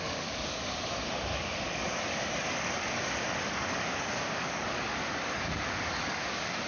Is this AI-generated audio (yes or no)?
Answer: yes